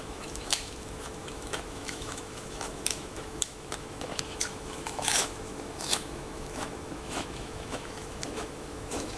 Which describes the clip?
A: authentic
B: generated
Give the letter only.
B